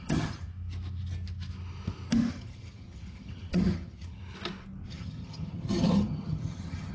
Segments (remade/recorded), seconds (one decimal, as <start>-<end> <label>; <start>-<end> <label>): 0.0-0.5 remade; 0.5-2.3 recorded; 2.3-4.2 remade; 4.2-4.9 recorded; 4.9-6.9 remade